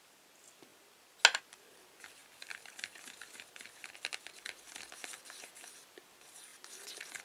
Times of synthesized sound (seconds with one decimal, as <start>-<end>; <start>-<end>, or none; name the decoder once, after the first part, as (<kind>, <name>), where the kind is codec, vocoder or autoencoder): none